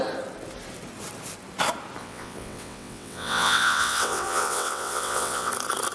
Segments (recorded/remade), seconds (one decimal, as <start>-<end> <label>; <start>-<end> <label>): 0.0-2.0 recorded; 2.0-5.5 remade; 5.5-5.9 recorded